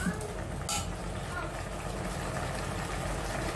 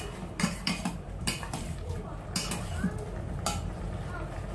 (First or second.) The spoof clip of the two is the second